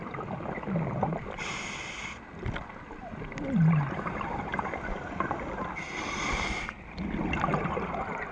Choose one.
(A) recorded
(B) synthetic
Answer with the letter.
A